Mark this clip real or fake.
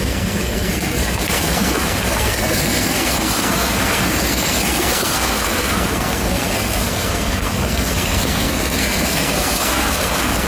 fake